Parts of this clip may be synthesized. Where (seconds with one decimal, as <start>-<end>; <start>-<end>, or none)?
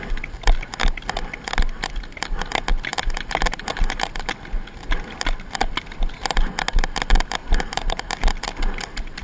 7.4-8.3